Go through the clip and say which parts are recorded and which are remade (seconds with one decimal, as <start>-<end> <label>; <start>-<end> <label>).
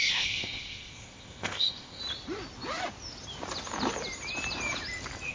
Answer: 0.0-2.0 remade; 2.0-5.3 recorded